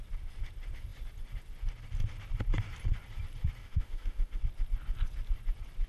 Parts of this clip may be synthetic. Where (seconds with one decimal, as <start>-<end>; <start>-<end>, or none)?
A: 3.6-4.4